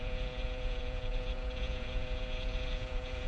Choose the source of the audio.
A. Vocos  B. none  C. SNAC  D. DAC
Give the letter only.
A